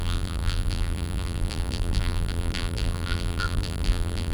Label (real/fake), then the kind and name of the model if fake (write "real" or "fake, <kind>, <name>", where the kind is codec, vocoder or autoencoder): fake, vocoder, BigVGAN v2